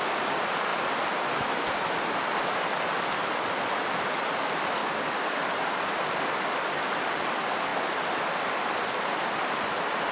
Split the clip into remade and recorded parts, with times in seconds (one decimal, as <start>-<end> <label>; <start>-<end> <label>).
0.0-4.8 recorded; 4.8-5.4 remade; 5.4-10.1 recorded